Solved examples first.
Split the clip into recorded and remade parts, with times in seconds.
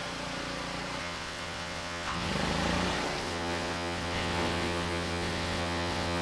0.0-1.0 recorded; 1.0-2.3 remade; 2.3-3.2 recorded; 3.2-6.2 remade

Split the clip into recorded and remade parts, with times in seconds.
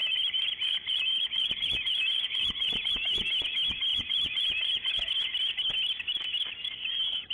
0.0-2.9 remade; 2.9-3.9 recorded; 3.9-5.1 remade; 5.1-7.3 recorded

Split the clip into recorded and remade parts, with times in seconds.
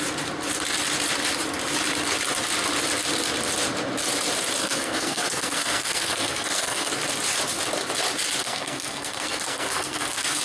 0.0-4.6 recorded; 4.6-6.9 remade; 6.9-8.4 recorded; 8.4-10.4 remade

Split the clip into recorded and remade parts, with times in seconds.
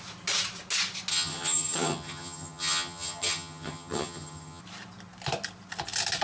0.0-1.1 recorded; 1.1-4.6 remade; 4.6-6.2 recorded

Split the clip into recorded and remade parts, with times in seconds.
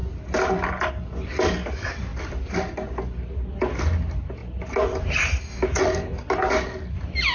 0.0-7.3 recorded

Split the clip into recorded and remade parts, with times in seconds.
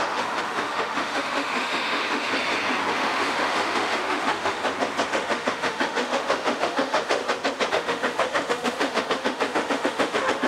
0.0-2.3 remade; 2.3-2.9 recorded; 2.9-4.6 remade; 4.6-5.1 recorded; 5.1-7.2 remade; 7.2-7.7 recorded; 7.7-10.5 remade